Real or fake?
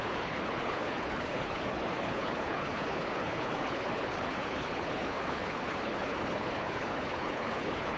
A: fake